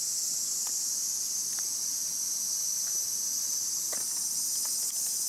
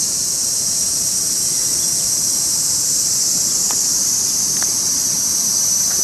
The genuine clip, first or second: first